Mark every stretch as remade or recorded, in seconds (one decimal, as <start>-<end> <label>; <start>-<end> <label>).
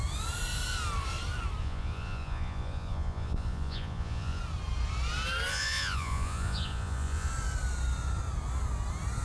0.0-1.6 recorded; 1.6-4.4 remade; 4.4-5.5 recorded; 5.5-7.3 remade; 7.3-9.2 recorded